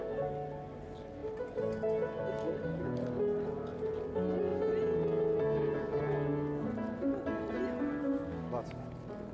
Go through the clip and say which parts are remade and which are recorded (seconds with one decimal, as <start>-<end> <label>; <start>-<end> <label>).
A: 0.0-7.9 recorded; 7.9-8.5 remade; 8.5-9.3 recorded